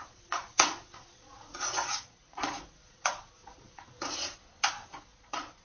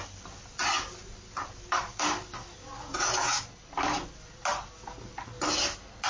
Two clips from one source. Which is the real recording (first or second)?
second